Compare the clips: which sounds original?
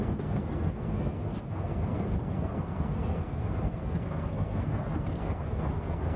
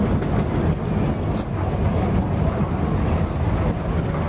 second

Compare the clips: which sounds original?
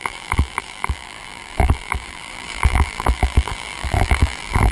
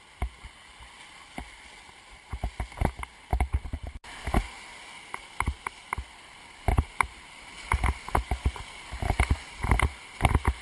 second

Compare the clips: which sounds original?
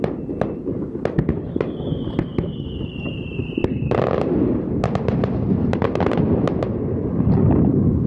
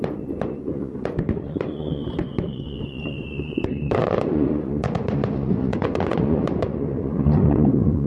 first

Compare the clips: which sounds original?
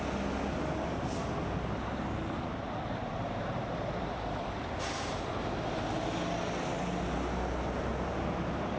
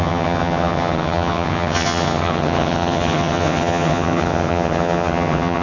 first